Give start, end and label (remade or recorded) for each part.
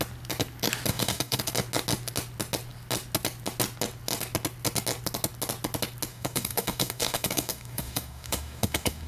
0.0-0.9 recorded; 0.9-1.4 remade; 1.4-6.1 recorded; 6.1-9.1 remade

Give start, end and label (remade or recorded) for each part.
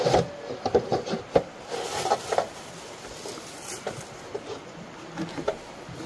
0.0-6.1 recorded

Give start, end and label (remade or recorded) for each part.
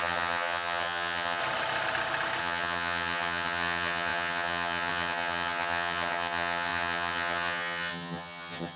0.0-1.4 remade; 1.4-2.4 recorded; 2.4-8.8 remade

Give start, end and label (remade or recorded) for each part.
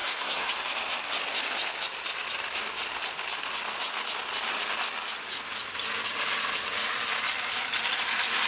0.0-0.5 remade; 0.5-8.5 recorded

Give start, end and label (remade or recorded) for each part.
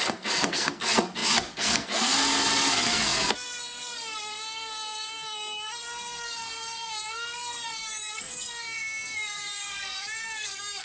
0.0-10.8 remade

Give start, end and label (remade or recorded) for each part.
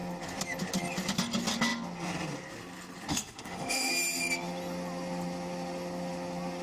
0.0-3.1 recorded; 3.1-3.9 remade; 3.9-6.6 recorded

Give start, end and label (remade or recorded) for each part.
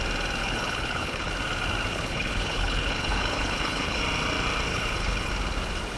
0.0-0.4 recorded; 0.4-1.3 remade; 1.3-1.9 recorded; 1.9-4.0 remade; 4.0-4.7 recorded; 4.7-5.3 remade; 5.3-6.0 recorded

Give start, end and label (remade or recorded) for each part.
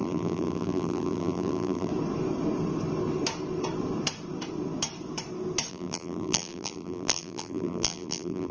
0.0-1.9 remade; 1.9-5.7 recorded; 5.7-8.5 remade